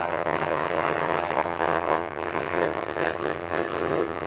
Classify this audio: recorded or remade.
remade